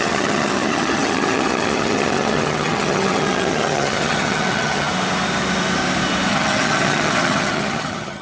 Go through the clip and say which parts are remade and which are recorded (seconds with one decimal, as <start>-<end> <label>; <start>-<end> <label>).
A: 0.0-4.9 remade; 4.9-6.3 recorded; 6.3-8.2 remade